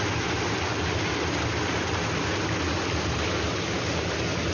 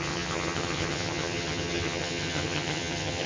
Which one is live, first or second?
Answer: first